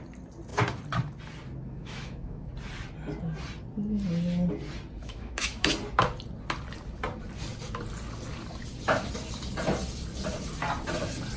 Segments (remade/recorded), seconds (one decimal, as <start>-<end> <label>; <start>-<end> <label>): 0.0-1.8 recorded; 1.8-2.5 remade; 2.5-5.0 recorded; 5.0-5.7 remade; 5.7-11.4 recorded

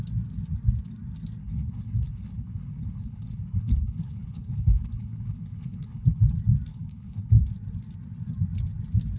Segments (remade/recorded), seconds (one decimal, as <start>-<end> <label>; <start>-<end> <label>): 0.0-1.4 recorded; 1.4-6.2 remade; 6.2-6.7 recorded; 6.7-7.5 remade; 7.5-9.2 recorded

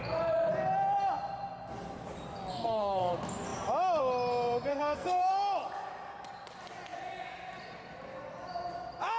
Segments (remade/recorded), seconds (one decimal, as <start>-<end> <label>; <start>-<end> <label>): 0.0-2.5 recorded; 2.5-3.1 remade; 3.1-4.7 recorded; 4.7-5.3 remade; 5.3-9.2 recorded

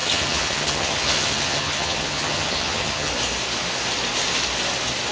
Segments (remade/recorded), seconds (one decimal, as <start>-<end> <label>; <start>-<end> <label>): 0.0-3.1 remade; 3.1-5.1 recorded